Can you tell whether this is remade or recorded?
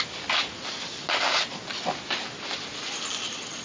recorded